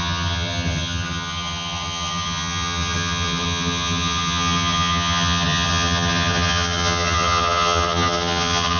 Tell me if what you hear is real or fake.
fake